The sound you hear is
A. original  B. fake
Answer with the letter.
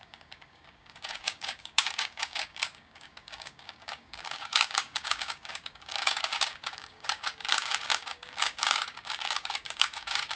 B